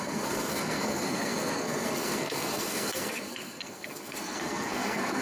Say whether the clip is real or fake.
fake